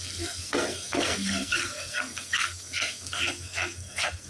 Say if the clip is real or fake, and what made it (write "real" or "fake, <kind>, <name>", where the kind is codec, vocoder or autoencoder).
fake, codec, SNAC